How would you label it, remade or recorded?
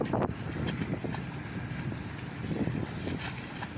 recorded